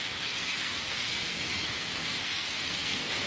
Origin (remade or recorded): remade